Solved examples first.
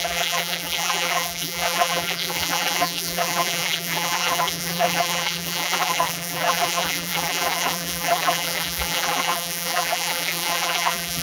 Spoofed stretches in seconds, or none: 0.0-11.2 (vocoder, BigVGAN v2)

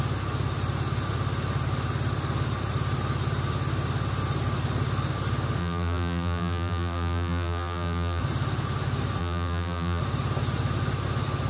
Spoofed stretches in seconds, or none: 5.6-8.2 (vocoder, BigVGAN v2); 9.2-10.0

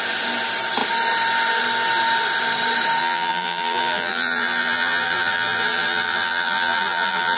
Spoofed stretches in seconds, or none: 3.0-7.4 (vocoder, BigVGAN v2)

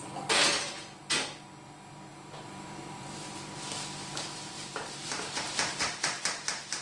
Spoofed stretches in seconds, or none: 2.1-6.2 (vocoder, BigVGAN v2)

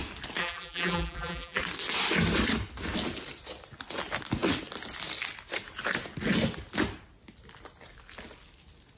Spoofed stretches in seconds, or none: 0.4-1.6 (vocoder, BigVGAN v2)

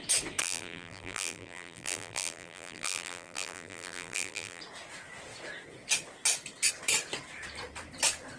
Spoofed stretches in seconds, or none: 0.4-4.6 (vocoder, BigVGAN v2)